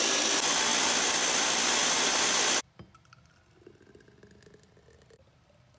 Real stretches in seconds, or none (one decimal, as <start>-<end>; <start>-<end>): 0.0-5.8